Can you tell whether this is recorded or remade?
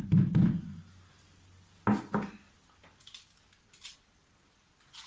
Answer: recorded